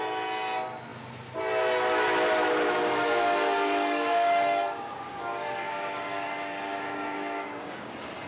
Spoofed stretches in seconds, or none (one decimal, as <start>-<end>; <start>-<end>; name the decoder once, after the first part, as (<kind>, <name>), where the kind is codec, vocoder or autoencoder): 2.9-7.9 (codec, DAC)